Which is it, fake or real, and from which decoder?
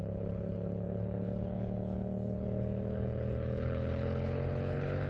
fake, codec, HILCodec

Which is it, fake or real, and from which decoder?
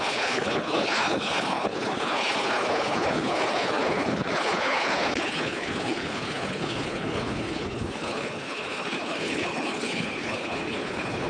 fake, codec, HILCodec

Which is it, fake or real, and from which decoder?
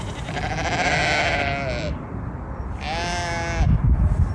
real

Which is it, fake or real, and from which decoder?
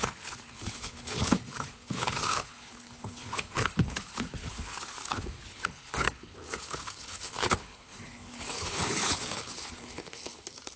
fake, codec, HILCodec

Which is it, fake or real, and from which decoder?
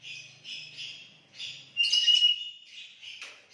real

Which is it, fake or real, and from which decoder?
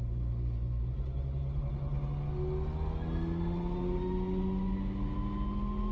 real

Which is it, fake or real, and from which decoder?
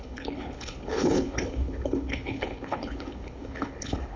fake, codec, HILCodec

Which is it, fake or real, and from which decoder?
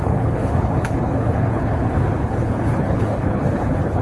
fake, codec, HILCodec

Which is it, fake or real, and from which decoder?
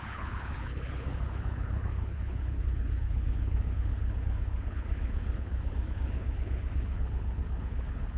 fake, codec, HILCodec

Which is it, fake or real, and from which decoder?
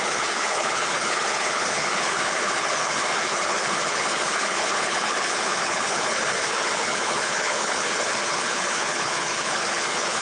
fake, codec, HILCodec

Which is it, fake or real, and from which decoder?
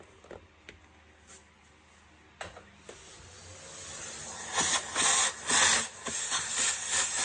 real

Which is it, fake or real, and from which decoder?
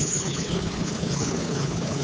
fake, codec, HILCodec